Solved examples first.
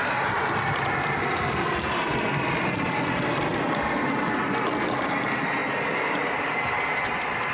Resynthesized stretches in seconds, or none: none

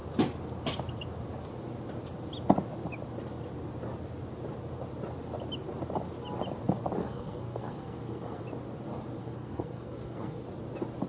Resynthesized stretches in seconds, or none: 7.0-8.4; 9.2-10.4

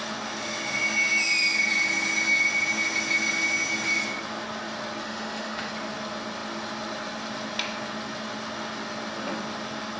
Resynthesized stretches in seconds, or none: 5.0-5.7

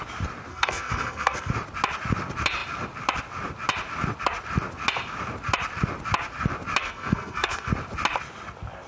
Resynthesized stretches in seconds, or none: 0.5-1.5; 6.8-7.7

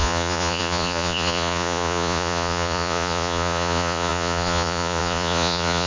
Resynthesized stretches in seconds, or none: 0.0-5.9

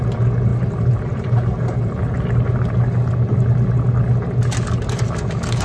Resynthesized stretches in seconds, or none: 0.5-1.9

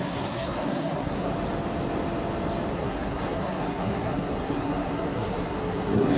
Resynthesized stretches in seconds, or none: 0.0-1.3; 2.7-6.2

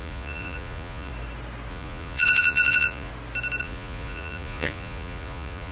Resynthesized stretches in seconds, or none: 0.0-1.1; 1.7-3.1; 3.6-5.7